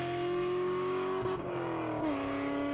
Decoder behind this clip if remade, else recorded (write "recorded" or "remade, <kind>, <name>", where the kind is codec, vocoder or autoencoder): remade, codec, DAC